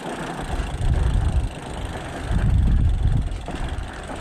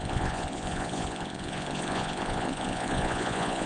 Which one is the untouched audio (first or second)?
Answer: first